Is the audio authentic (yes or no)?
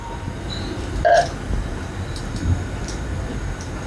yes